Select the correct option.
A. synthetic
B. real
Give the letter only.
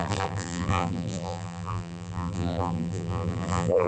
A